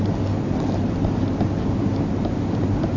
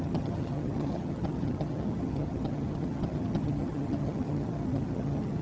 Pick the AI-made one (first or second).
second